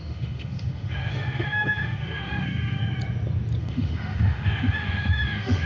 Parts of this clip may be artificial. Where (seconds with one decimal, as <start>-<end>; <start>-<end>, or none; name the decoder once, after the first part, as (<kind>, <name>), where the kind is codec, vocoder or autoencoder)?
0.0-2.8 (autoencoder, DAC-VAE); 3.6-5.7